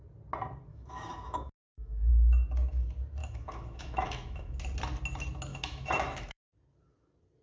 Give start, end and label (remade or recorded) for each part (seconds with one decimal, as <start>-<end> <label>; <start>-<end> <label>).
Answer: 0.0-0.7 recorded; 0.7-2.1 remade; 2.1-3.2 recorded; 3.2-4.6 remade; 4.6-5.5 recorded; 5.5-6.5 remade; 6.5-7.4 recorded